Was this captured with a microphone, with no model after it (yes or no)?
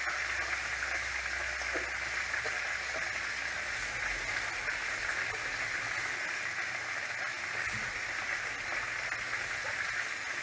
yes